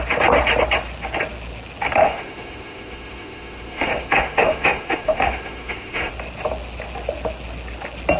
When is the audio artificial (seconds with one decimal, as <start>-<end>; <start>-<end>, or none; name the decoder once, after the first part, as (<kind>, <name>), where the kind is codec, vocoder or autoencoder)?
2.0-6.1 (autoencoder, DAC-VAE)